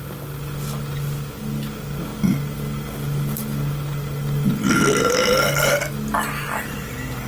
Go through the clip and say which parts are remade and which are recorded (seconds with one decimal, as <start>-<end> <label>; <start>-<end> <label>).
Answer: 0.0-7.3 recorded